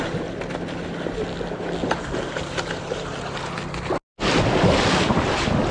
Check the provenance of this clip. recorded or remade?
recorded